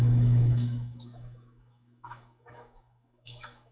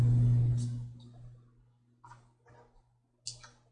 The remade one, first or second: first